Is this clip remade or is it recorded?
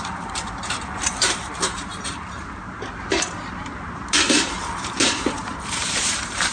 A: remade